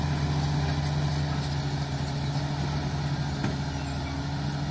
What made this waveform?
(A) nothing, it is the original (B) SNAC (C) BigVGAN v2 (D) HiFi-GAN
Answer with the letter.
A